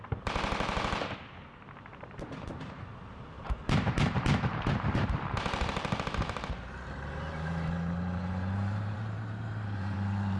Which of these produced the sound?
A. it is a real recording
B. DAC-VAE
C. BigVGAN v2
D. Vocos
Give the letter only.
C